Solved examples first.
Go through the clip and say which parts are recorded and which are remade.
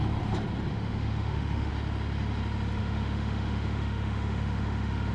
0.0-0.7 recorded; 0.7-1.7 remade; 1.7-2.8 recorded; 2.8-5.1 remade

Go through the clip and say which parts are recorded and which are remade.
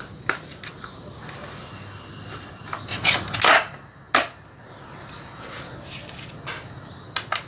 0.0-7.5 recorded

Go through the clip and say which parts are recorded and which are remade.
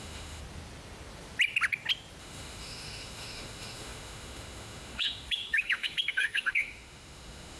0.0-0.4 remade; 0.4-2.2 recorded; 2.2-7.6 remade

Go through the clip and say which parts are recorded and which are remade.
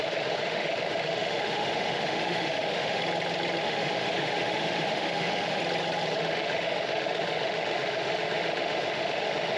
0.0-3.0 remade; 3.0-3.6 recorded; 3.6-5.6 remade; 5.6-6.2 recorded; 6.2-9.6 remade